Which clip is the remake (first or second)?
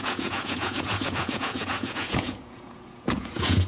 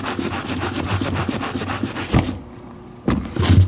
first